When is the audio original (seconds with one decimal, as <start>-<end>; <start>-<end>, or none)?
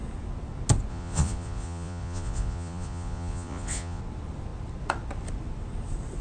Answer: 0.0-0.9; 4.0-6.2